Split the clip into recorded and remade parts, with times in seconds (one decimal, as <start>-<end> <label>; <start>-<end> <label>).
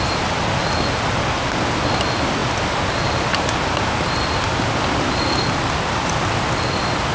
0.0-7.1 recorded